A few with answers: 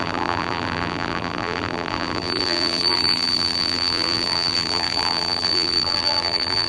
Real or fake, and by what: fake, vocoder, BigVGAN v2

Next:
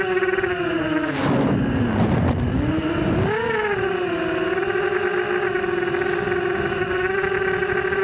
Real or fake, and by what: real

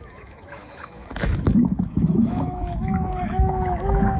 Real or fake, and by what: fake, autoencoder, DAC-VAE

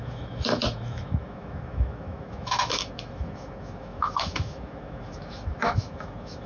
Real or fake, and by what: fake, autoencoder, DAC-VAE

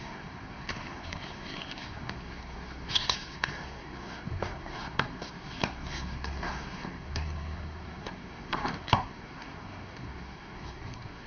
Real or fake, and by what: fake, codec, SNAC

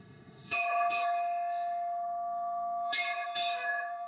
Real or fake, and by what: fake, autoencoder, DAC-VAE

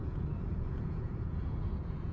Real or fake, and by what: fake, vocoder, Vocos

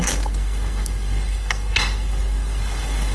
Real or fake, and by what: fake, codec, SNAC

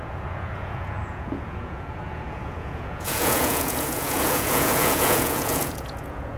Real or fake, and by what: fake, vocoder, Vocos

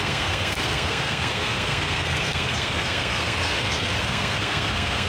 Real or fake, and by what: fake, codec, SNAC